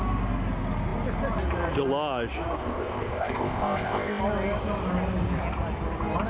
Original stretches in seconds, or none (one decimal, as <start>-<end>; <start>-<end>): 0.0-2.6; 4.2-6.3